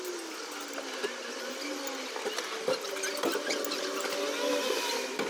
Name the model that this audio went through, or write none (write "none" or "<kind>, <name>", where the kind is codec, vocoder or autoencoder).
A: none